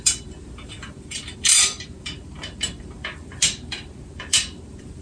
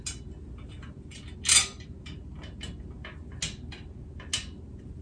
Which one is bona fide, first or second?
second